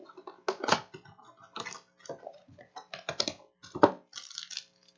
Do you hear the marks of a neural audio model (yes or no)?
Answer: no